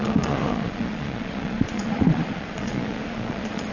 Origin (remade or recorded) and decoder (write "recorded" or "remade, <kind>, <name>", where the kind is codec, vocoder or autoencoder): remade, vocoder, Vocos